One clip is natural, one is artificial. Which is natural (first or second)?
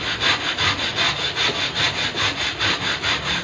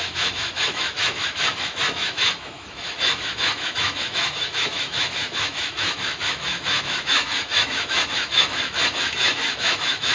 first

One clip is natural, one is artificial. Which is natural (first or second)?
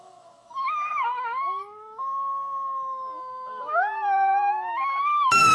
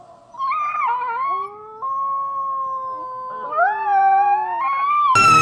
second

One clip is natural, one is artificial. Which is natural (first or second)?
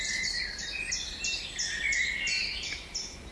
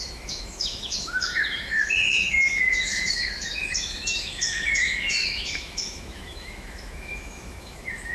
first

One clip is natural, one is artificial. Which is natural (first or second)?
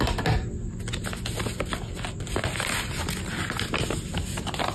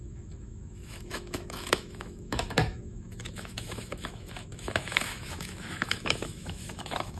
first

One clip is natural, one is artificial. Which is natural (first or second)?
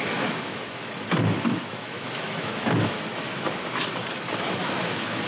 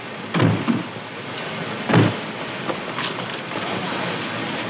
second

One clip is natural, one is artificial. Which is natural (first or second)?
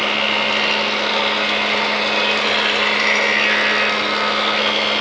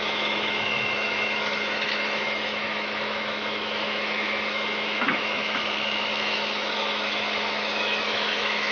first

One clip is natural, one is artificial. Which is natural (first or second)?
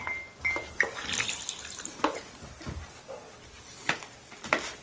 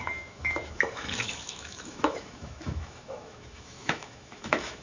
first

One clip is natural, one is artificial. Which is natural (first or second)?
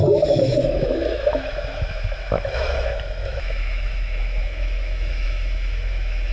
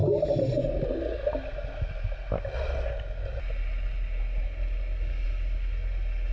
second